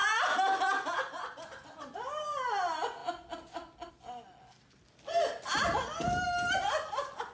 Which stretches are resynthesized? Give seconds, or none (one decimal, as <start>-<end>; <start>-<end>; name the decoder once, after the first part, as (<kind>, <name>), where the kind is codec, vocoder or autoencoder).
none